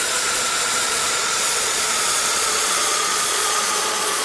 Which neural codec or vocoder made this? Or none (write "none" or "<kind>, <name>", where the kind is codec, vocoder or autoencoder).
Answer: vocoder, Vocos